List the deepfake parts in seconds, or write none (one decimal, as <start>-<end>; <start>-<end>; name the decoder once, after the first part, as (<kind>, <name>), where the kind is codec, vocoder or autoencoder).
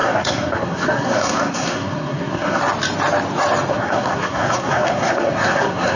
0.0-2.6 (codec, SNAC); 3.7-6.0